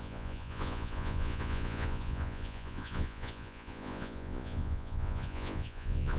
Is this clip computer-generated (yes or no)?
yes